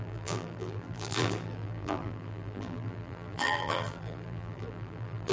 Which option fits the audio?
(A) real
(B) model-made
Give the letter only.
B